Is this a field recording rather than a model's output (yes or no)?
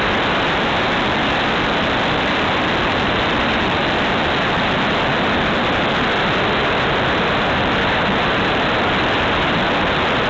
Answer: yes